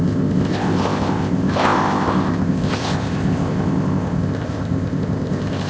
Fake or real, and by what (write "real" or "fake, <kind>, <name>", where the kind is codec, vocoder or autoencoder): fake, codec, ZipCodec